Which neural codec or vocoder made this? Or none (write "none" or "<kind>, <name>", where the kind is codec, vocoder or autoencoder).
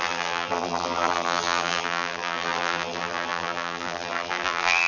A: vocoder, BigVGAN v2